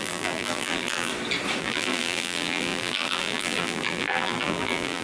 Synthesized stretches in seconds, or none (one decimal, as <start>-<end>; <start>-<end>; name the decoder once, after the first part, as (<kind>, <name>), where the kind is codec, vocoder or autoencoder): 0.0-1.1 (vocoder, BigVGAN v2); 1.6-5.0